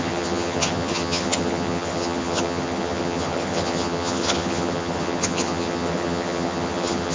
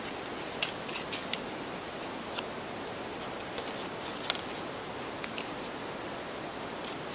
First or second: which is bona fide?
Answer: second